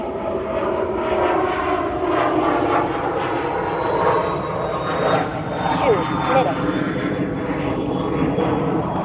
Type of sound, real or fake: real